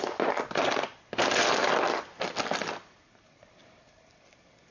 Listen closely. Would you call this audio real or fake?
real